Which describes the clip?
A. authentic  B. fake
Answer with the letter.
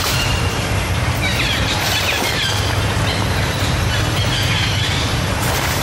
B